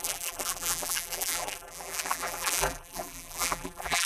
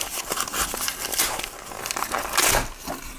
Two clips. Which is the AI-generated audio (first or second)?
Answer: first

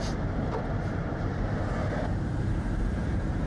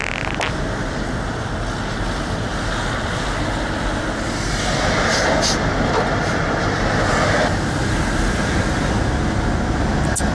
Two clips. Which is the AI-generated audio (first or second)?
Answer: first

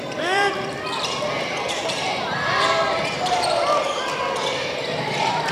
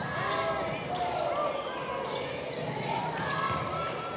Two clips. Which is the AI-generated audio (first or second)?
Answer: first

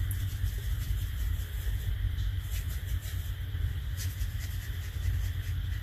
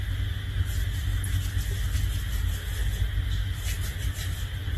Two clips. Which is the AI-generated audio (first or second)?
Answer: first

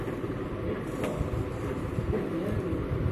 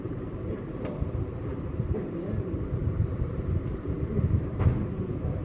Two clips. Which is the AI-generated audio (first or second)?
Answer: second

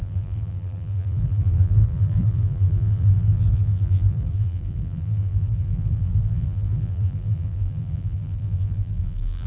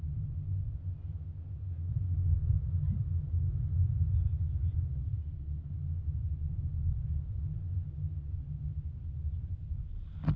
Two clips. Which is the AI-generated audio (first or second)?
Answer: first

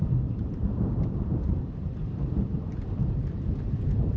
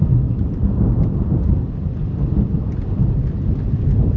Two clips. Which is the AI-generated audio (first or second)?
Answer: first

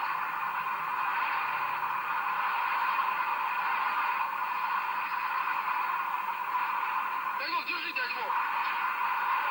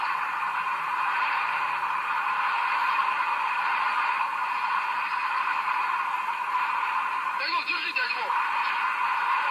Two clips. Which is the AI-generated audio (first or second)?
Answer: second